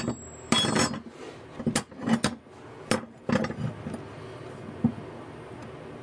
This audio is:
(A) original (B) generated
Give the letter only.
A